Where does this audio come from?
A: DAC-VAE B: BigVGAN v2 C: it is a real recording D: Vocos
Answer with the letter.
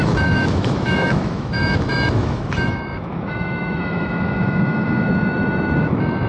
A